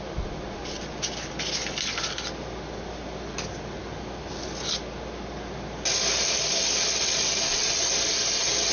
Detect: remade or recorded recorded